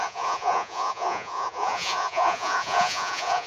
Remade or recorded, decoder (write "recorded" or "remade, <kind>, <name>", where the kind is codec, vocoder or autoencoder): remade, vocoder, Vocos